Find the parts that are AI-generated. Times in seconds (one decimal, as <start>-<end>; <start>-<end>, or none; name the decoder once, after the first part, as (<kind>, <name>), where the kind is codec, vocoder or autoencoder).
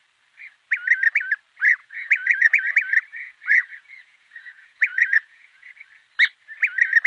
1.8-2.7 (vocoder, Vocos); 3.1-5.7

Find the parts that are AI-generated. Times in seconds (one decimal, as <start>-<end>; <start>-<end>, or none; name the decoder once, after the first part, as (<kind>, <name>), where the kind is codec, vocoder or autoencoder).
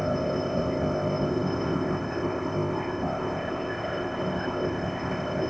0.0-5.5 (codec, ZipCodec)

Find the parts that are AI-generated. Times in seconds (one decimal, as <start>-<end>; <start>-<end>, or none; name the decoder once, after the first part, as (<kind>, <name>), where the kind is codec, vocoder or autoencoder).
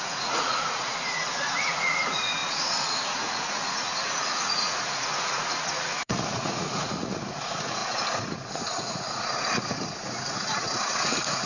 0.0-11.5 (vocoder, Vocos)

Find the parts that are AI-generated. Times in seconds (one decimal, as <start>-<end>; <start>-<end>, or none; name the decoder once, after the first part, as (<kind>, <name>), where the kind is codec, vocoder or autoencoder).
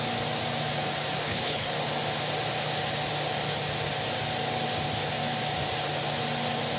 1.2-1.7 (codec, HILCodec)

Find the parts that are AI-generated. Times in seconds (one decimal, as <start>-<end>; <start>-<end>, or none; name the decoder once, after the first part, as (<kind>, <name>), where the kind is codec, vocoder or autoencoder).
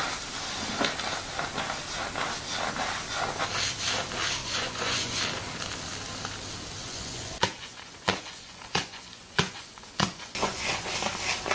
4.4-5.2 (vocoder, Vocos); 6.8-10.9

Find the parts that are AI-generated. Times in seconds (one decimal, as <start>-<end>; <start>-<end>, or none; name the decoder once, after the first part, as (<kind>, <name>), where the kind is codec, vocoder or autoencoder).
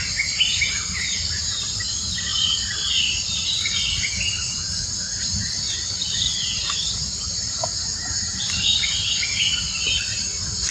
none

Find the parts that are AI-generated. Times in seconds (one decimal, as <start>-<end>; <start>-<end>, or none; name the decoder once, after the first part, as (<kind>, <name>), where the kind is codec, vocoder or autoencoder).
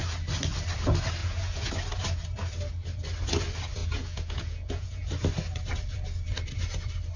1.2-1.7 (vocoder, Vocos); 3.8-5.1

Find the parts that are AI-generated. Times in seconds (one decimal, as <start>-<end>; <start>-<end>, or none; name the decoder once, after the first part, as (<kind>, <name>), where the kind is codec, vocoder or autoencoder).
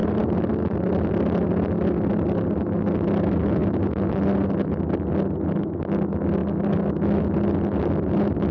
0.0-0.5 (vocoder, BigVGAN v2)